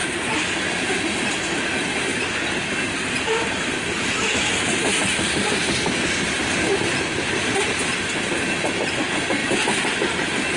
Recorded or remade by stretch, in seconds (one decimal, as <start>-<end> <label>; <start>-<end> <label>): 0.0-10.6 recorded